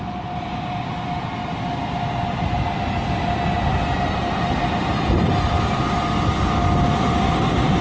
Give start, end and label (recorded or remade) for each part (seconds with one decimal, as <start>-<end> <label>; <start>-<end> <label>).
0.0-1.4 recorded; 1.4-2.8 remade; 2.8-3.7 recorded; 3.7-6.1 remade; 6.1-7.8 recorded